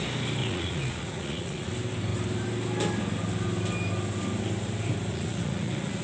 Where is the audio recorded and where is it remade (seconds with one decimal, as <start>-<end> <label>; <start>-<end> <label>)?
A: 0.0-0.4 recorded; 0.4-1.7 remade; 1.7-5.1 recorded; 5.1-6.0 remade